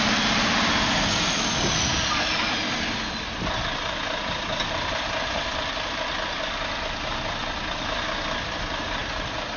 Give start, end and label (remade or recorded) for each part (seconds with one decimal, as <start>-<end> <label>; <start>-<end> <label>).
0.0-9.6 recorded